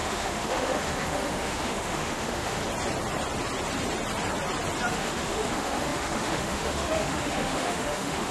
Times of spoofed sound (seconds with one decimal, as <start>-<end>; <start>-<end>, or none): 0.0-2.6; 4.9-8.3